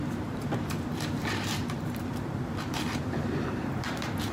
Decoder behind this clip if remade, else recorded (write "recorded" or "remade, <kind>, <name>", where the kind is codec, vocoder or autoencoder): remade, vocoder, BigVGAN v2